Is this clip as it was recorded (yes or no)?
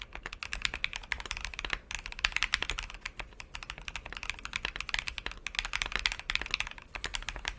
no